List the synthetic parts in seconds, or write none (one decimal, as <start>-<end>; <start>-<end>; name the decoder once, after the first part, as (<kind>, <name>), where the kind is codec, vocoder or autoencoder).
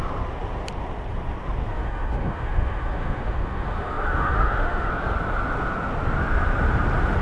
1.7-4.9 (autoencoder, DAC-VAE)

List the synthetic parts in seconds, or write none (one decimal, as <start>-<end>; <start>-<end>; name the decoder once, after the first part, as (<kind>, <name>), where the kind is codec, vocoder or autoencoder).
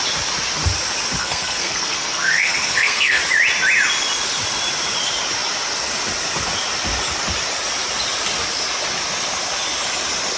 1.2-3.2 (codec, SNAC)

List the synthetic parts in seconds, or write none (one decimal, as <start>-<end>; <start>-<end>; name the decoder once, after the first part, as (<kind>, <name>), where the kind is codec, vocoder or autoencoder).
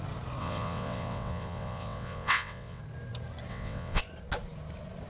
0.4-2.8 (vocoder, WaveNeXt); 3.5-4.0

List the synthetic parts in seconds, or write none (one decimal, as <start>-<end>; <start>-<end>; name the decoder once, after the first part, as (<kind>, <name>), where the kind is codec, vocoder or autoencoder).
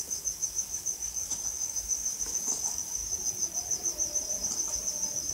0.0-3.0 (codec, DAC)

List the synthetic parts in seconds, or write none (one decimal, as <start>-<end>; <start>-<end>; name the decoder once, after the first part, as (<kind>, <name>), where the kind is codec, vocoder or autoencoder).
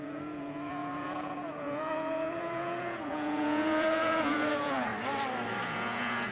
0.0-4.9 (vocoder, Vocos); 5.6-6.3